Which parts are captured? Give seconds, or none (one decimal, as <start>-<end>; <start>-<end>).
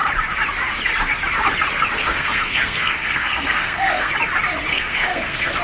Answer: 0.0-2.0; 4.1-4.7